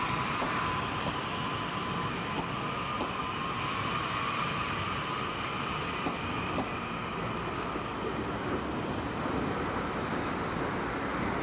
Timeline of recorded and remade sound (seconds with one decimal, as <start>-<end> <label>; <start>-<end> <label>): 0.0-7.9 recorded; 7.9-8.5 remade; 8.5-11.4 recorded